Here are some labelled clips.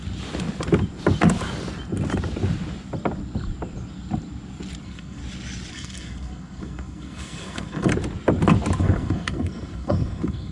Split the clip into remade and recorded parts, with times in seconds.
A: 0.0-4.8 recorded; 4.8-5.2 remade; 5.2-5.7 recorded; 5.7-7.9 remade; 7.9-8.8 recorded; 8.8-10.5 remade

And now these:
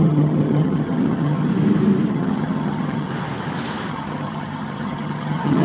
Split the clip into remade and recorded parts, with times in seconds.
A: 0.0-1.5 remade; 1.5-2.1 recorded; 2.1-3.1 remade; 3.1-3.9 recorded; 3.9-5.6 remade

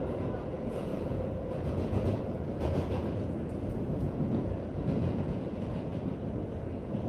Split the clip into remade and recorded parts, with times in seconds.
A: 0.0-5.9 remade; 5.9-6.6 recorded; 6.6-7.1 remade

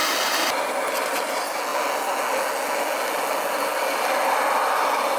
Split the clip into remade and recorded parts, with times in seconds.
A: 0.0-5.2 recorded

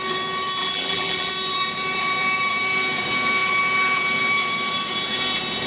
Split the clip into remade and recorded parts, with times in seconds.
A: 0.0-0.6 recorded; 0.6-1.3 remade; 1.3-5.7 recorded

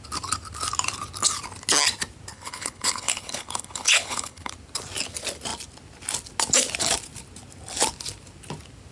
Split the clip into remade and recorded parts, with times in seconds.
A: 0.0-2.3 recorded; 2.3-4.5 remade; 4.5-8.9 recorded

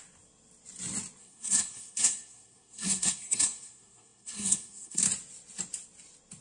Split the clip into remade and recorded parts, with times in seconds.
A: 0.0-1.2 recorded; 1.2-5.0 remade; 5.0-6.4 recorded